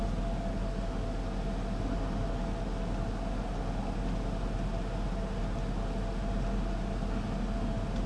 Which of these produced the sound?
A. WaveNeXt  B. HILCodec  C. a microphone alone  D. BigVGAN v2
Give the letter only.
C